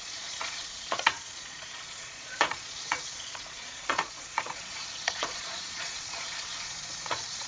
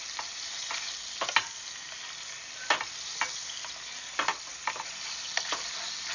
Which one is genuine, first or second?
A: second